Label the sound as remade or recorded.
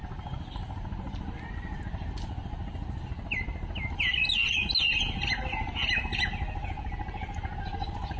recorded